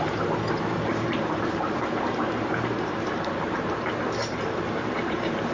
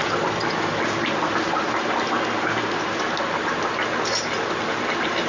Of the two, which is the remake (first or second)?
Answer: first